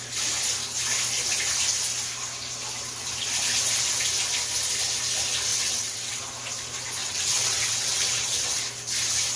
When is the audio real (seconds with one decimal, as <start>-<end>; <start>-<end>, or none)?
0.0-5.5; 6.2-7.0; 8.6-9.4